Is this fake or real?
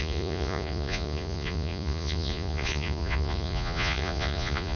fake